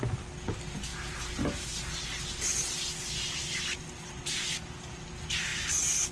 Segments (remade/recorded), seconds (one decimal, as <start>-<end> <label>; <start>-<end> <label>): 0.0-6.1 recorded